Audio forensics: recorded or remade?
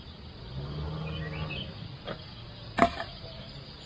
recorded